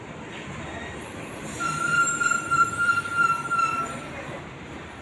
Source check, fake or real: fake